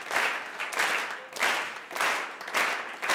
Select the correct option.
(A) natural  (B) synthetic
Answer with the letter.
A